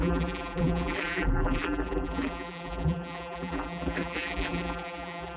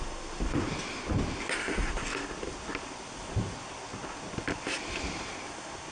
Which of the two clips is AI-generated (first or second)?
first